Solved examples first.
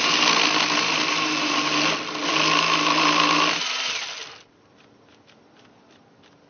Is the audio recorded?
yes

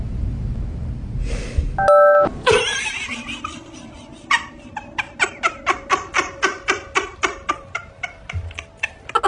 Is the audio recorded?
yes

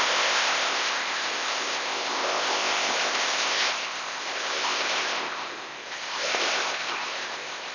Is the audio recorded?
no